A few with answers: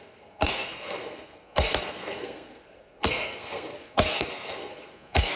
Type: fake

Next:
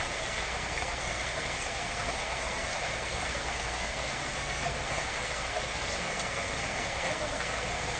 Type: fake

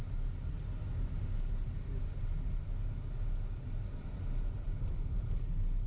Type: real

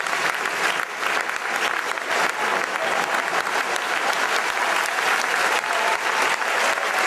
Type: real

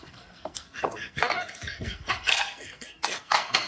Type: fake